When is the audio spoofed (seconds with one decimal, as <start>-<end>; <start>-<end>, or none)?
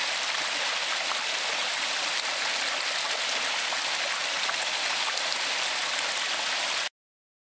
0.0-0.7; 1.6-2.3